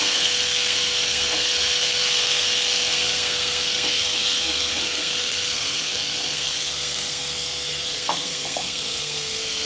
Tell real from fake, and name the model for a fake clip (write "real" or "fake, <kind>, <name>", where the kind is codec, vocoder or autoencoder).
fake, codec, SNAC